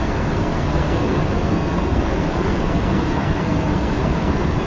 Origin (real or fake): fake